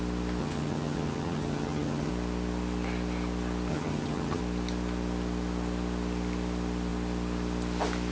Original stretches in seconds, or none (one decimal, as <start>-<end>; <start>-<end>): 0.0-0.4; 2.1-3.7; 4.4-8.1